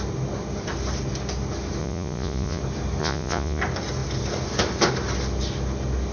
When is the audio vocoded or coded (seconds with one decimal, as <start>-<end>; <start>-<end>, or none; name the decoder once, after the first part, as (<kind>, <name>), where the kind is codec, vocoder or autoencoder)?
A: 1.8-2.6 (vocoder, Vocos); 3.0-3.6